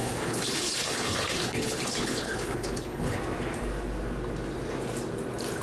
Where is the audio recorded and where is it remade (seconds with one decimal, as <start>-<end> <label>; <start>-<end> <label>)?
0.0-3.2 remade; 3.2-5.6 recorded